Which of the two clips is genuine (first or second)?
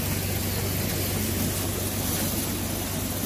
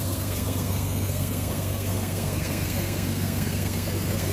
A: first